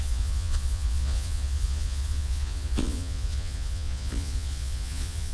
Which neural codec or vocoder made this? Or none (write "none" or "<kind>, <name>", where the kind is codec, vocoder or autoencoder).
vocoder, Vocos